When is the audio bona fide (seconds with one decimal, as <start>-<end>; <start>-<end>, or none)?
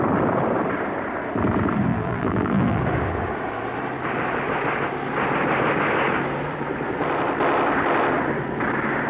0.0-1.9; 2.8-9.1